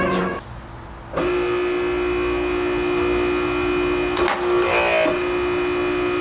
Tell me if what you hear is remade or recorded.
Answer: recorded